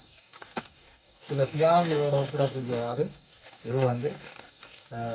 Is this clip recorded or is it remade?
remade